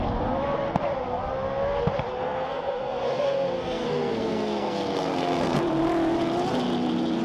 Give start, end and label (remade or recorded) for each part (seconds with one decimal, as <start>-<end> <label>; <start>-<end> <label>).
0.0-2.1 recorded; 2.1-5.6 remade; 5.6-7.2 recorded